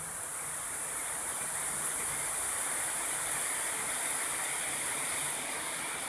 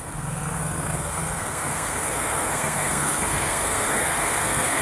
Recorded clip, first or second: first